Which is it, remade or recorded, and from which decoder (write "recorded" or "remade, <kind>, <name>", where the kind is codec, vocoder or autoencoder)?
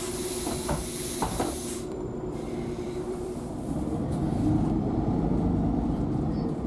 remade, vocoder, BigVGAN v2